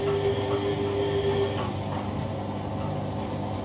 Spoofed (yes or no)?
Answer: no